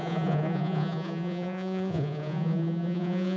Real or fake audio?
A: fake